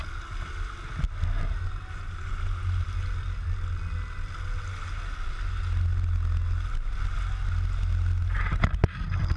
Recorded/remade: recorded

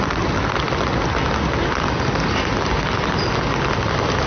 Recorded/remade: recorded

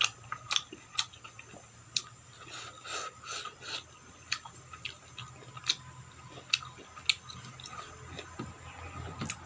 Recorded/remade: recorded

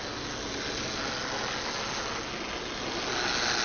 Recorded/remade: recorded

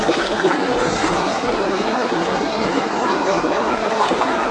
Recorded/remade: remade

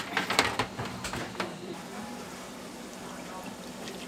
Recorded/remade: recorded